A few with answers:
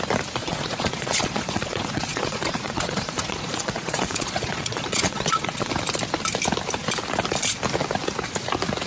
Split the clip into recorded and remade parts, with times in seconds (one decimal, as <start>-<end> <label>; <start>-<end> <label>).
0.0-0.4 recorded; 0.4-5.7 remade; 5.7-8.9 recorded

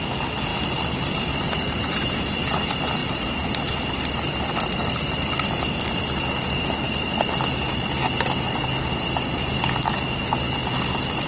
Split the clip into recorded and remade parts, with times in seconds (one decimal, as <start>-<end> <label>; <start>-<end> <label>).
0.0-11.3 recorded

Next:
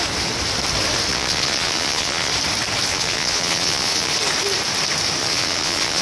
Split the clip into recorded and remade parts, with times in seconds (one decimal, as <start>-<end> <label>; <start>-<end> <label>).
0.0-1.1 recorded; 1.1-2.3 remade; 2.3-2.9 recorded; 2.9-4.1 remade; 4.1-5.2 recorded; 5.2-6.0 remade